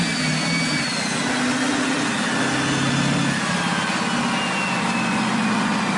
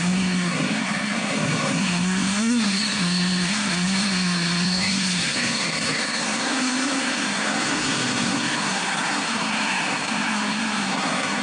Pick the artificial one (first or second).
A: second